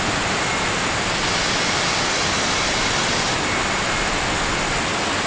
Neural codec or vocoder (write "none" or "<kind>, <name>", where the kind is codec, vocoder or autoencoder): none